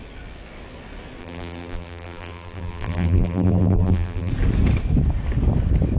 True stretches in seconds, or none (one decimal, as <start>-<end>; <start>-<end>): 0.0-1.2; 4.3-6.0